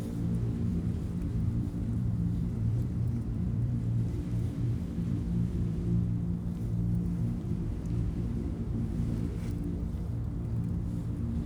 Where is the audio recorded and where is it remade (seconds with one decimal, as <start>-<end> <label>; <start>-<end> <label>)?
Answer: 0.0-0.7 recorded; 0.7-5.8 remade; 5.8-7.2 recorded; 7.2-9.2 remade; 9.2-11.5 recorded